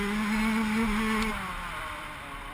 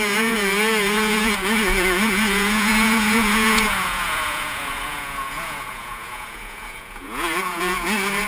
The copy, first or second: second